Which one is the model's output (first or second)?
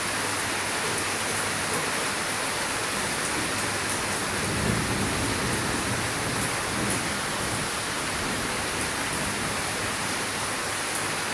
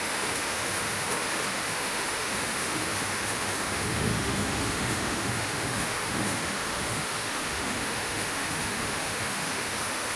second